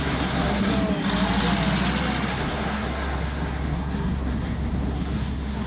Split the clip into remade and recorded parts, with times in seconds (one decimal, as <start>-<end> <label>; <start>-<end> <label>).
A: 0.0-0.7 remade; 0.7-2.3 recorded; 2.3-5.7 remade